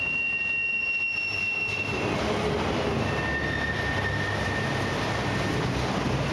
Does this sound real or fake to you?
real